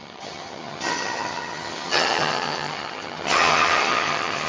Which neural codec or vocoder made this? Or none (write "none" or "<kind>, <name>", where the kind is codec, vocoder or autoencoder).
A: vocoder, HiFi-GAN